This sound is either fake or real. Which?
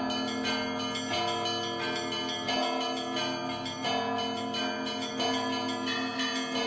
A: real